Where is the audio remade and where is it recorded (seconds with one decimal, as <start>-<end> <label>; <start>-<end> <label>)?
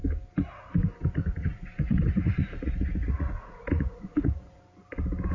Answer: 0.0-1.4 recorded; 1.4-4.6 remade; 4.6-5.3 recorded